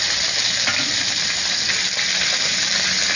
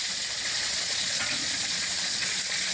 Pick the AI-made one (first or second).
second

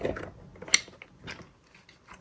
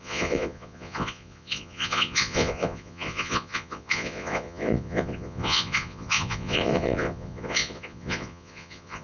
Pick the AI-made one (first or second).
second